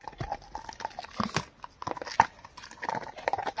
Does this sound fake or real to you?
real